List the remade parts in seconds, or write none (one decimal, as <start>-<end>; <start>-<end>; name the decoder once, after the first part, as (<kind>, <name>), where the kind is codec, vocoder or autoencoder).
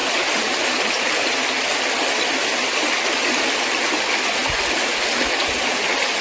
none